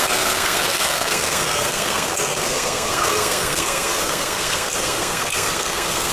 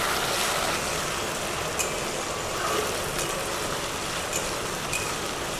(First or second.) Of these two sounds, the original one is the second